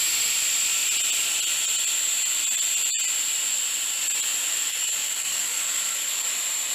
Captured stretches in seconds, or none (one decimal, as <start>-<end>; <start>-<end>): 0.0-4.7; 6.3-6.7